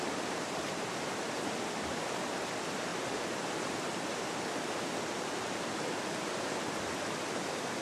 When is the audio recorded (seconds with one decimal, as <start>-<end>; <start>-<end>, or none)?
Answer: 0.0-7.8